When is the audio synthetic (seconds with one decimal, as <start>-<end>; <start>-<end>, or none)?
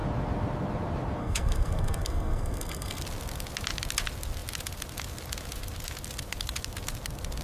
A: 1.2-3.0